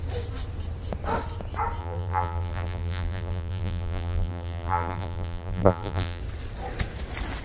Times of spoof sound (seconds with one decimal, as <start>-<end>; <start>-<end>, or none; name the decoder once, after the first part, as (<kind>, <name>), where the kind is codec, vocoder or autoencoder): 1.8-6.2 (vocoder, BigVGAN v2)